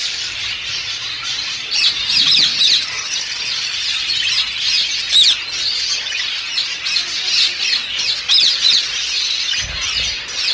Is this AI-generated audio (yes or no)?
no